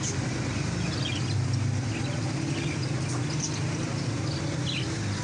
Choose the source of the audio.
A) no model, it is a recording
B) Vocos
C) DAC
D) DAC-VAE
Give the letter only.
A